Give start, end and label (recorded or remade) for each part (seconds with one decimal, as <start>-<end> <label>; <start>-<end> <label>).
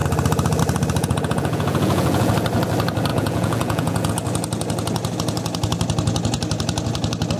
0.0-1.0 recorded; 1.0-2.3 remade; 2.3-3.1 recorded; 3.1-4.1 remade; 4.1-7.4 recorded